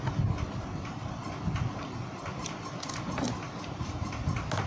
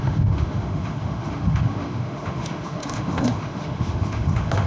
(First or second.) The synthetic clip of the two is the second